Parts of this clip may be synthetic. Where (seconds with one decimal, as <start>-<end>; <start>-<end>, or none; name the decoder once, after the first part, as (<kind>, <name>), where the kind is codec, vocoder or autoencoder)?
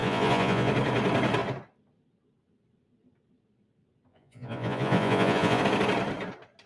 0.0-0.7 (vocoder, Vocos); 4.1-5.6